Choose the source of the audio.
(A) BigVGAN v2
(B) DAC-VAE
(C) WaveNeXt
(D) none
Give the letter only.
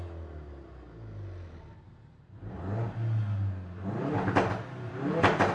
D